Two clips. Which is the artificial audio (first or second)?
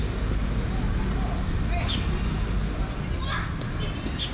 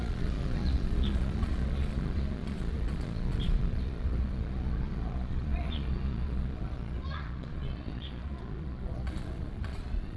second